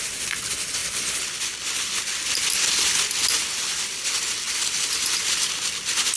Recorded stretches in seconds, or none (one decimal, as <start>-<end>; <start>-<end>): 0.0-6.2